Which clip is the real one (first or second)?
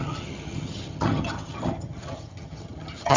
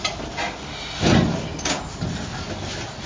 second